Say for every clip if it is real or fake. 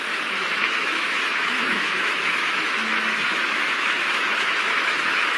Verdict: fake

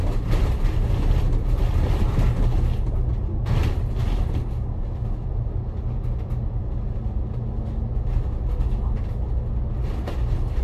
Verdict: real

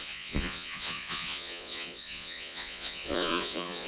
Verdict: fake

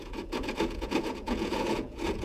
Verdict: fake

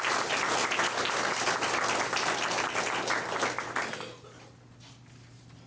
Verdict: real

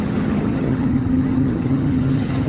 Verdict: fake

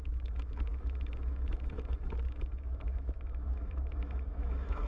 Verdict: fake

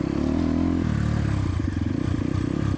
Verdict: real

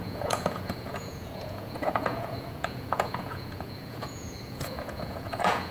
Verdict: fake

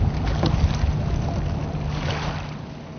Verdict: real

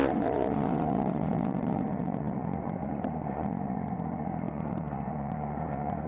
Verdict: fake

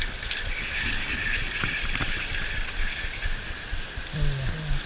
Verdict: real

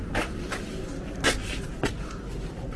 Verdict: real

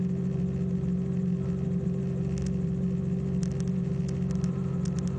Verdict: real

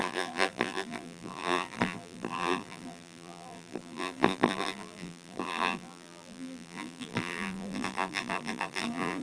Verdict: fake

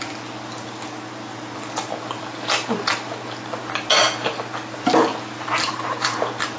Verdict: real